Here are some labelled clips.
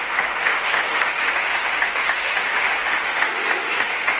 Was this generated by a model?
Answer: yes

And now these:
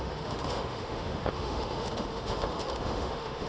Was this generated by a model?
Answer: yes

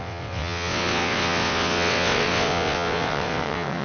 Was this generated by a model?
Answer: yes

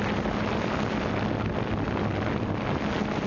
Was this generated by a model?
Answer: no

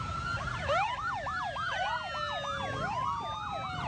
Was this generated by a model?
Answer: no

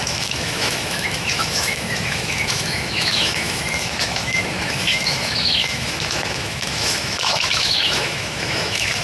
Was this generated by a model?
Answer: yes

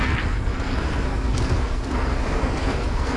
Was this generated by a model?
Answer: yes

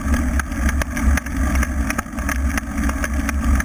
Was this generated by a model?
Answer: no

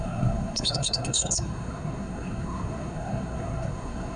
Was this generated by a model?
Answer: yes